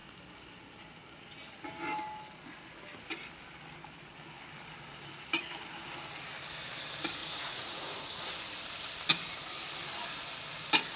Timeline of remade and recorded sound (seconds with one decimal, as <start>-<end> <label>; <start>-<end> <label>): 0.0-7.2 recorded; 7.2-8.3 remade; 8.3-11.0 recorded